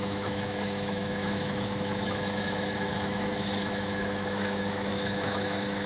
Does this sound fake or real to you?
fake